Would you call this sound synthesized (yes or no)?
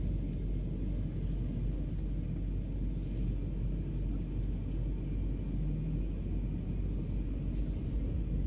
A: no